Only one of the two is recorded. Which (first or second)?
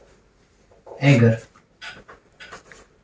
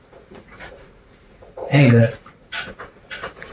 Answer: first